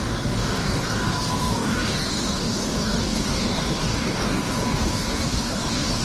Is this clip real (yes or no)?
no